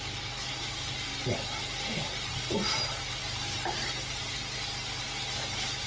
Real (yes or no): yes